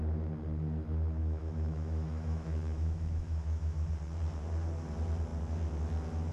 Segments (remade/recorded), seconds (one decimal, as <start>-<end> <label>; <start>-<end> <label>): 0.0-1.2 recorded; 1.2-3.9 remade; 3.9-6.3 recorded